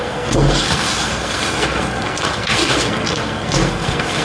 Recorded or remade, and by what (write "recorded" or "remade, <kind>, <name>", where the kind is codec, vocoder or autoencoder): remade, codec, SNAC